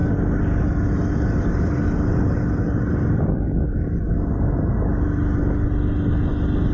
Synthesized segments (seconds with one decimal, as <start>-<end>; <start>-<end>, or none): none